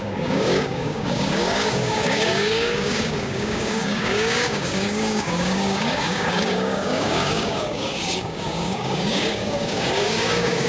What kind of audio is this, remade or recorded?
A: remade